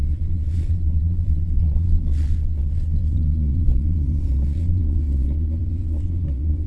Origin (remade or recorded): remade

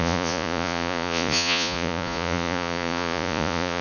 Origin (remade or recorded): remade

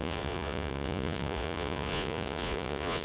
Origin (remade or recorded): remade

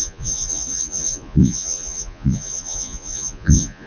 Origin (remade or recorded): remade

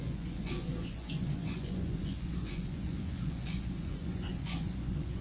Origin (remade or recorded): remade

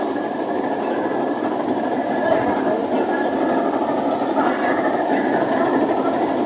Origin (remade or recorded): recorded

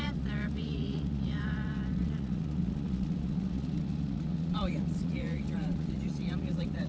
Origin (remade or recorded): remade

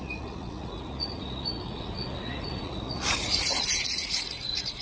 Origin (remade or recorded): remade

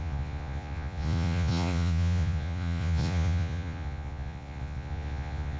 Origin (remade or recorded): remade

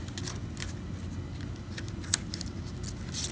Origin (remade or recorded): recorded